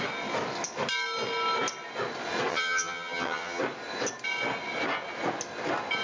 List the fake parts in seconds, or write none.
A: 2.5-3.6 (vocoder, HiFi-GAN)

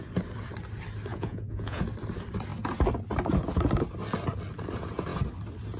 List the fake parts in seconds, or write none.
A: 1.1-1.8 (vocoder, Vocos)

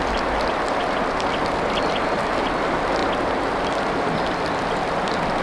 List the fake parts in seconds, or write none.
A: none

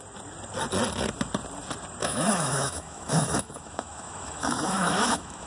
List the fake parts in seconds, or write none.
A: 2.0-5.5 (autoencoder, DAC-VAE)

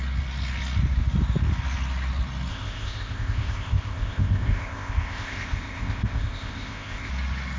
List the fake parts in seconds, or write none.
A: 2.5-7.1 (codec, ZipCodec)

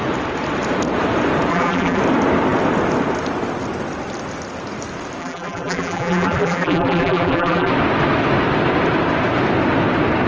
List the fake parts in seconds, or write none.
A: 1.5-2.0 (vocoder, BigVGAN v2); 5.2-7.7

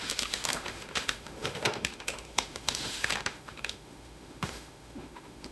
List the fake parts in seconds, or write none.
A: 0.0-5.5 (autoencoder, DAC-VAE)